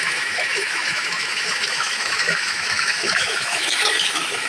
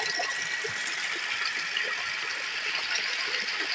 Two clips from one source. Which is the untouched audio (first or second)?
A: second